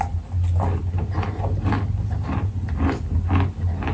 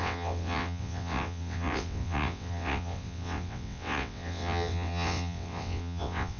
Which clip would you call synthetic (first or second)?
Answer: second